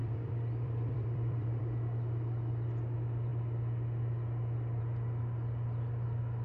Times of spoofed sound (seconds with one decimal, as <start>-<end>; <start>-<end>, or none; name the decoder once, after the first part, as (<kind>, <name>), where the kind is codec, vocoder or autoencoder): 0.0-1.6 (vocoder, BigVGAN v2)